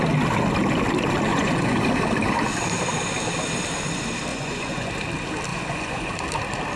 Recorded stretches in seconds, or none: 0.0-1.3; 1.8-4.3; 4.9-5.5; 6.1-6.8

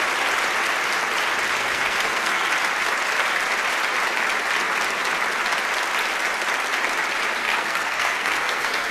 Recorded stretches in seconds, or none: 0.0-1.6; 2.5-7.4

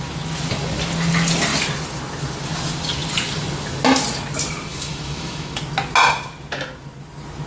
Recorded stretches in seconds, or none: 0.0-4.7; 5.6-7.5

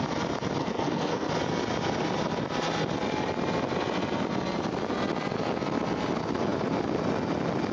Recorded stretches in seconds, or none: 0.0-0.6; 1.3-7.7

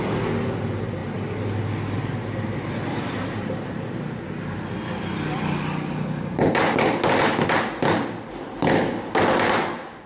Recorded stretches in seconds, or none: 0.0-10.1

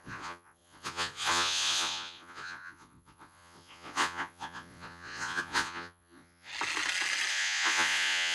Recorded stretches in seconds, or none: 6.5-7.3

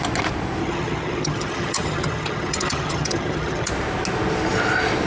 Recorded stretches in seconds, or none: 0.0-0.6; 3.7-5.1

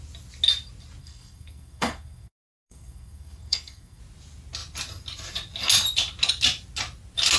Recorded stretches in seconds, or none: 0.0-1.0; 4.0-7.4